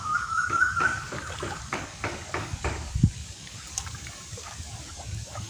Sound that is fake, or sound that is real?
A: fake